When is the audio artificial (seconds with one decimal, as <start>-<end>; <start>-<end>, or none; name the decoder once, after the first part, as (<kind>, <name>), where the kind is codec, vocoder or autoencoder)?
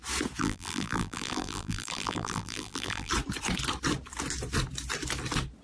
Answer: 0.4-3.1 (vocoder, BigVGAN v2)